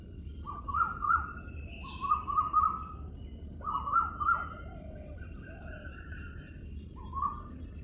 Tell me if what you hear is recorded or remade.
recorded